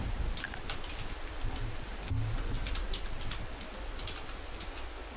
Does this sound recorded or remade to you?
recorded